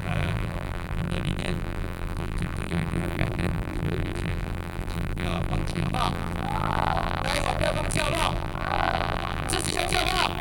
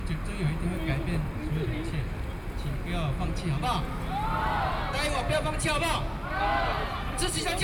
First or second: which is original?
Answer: second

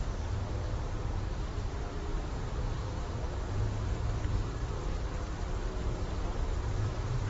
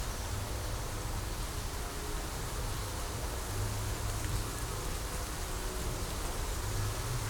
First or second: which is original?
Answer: second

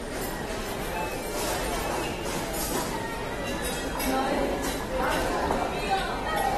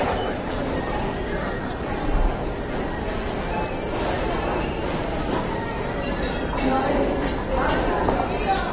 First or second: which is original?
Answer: first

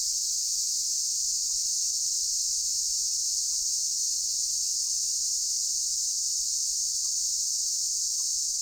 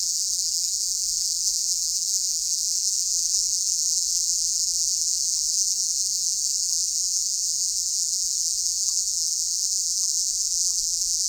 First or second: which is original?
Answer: first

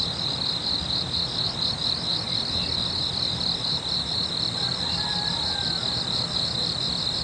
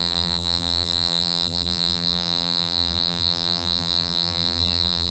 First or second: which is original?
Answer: first